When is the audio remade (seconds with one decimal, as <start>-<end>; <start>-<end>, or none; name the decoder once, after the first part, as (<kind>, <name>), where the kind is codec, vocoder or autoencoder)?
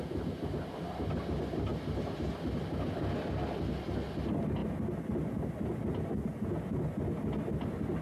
none